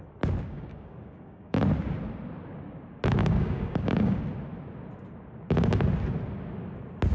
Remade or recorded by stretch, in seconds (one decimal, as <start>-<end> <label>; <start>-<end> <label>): 0.0-0.5 recorded; 0.5-1.6 remade; 1.6-3.2 recorded; 3.2-4.2 remade; 4.2-7.1 recorded